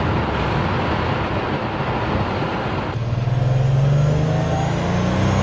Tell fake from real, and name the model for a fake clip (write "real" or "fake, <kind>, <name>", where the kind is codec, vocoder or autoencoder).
real